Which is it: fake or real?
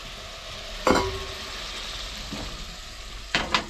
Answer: real